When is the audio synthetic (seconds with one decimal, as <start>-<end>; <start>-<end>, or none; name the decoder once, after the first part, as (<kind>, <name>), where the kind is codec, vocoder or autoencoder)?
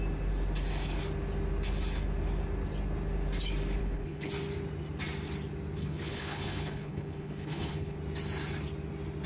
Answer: 3.8-4.3 (codec, HILCodec); 5.8-8.0